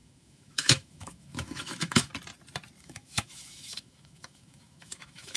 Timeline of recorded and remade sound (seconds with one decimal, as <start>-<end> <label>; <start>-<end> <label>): 0.0-2.1 remade; 2.1-2.8 recorded; 2.8-5.4 remade